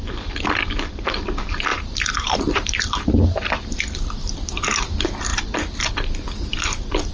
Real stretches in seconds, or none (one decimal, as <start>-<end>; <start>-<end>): 0.0-1.7; 3.6-5.3; 5.9-7.1